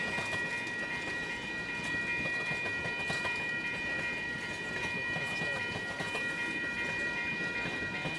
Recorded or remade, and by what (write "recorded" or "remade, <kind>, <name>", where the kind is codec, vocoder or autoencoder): recorded